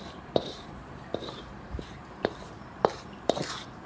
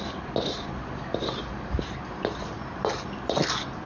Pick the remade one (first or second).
first